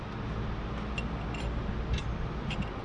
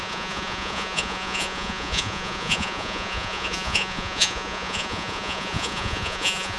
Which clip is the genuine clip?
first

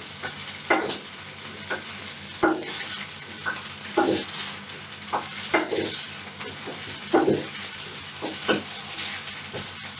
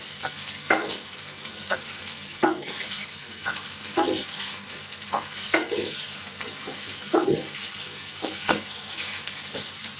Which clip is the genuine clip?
first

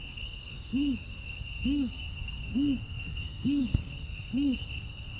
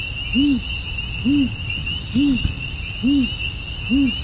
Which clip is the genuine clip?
second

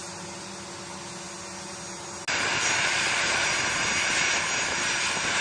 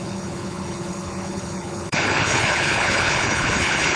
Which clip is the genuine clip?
first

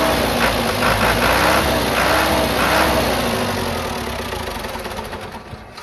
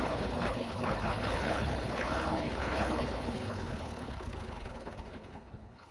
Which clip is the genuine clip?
first